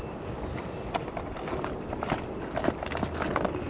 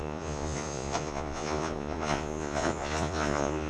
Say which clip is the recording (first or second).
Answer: first